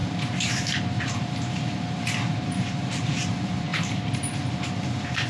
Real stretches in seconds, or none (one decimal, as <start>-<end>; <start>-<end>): none